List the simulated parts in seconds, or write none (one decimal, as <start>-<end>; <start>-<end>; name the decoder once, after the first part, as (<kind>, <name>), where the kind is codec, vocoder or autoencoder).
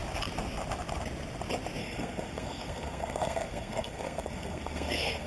1.8-5.3 (codec, SNAC)